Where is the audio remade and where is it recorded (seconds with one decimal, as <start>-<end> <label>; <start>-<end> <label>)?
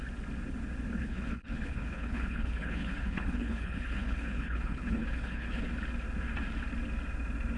0.0-1.0 recorded; 1.0-5.6 remade; 5.6-7.6 recorded